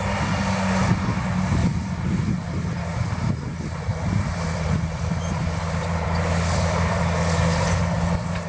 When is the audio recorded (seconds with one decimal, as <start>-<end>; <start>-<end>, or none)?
0.0-1.6; 2.3-3.5; 7.0-8.5